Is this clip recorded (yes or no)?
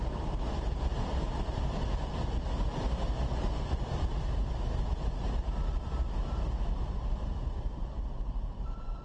no